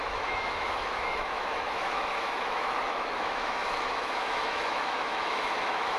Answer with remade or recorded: remade